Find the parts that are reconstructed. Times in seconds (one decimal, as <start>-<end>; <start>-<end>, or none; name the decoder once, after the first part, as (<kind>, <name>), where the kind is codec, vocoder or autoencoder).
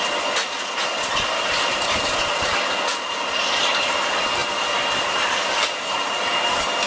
none